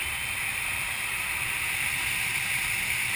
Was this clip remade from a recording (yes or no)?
no